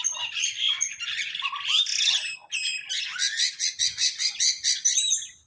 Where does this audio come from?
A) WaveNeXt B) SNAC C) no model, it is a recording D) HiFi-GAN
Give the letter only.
C